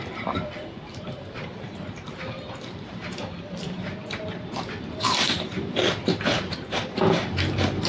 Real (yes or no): no